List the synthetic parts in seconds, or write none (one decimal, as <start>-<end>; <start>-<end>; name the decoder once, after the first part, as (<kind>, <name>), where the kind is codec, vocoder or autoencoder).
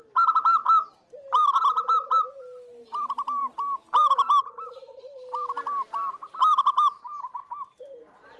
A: none